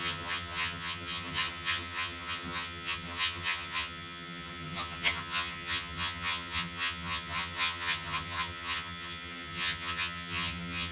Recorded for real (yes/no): no